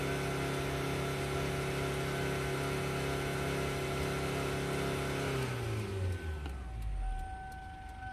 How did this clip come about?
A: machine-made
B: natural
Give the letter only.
B